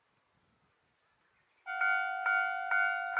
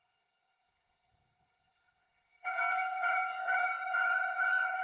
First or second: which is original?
first